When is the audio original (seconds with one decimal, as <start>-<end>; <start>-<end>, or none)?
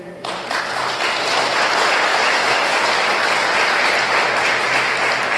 0.0-2.1; 2.7-5.4